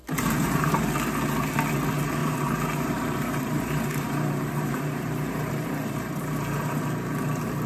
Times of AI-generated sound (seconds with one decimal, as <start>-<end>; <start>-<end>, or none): 0.0-0.9; 2.2-6.8